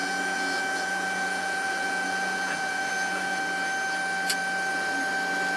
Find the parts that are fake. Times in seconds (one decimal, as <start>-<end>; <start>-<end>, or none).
0.0-3.4